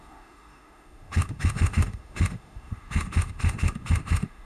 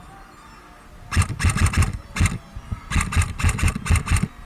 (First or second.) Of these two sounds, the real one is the second